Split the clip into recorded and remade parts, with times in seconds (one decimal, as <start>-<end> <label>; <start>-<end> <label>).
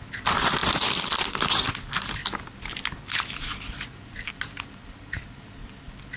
0.0-6.2 recorded